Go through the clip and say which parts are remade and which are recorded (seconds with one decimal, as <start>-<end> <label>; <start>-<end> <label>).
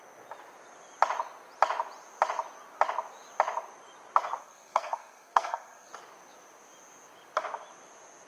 0.0-4.4 recorded; 4.4-5.9 remade; 5.9-8.3 recorded